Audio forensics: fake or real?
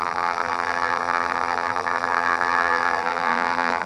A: fake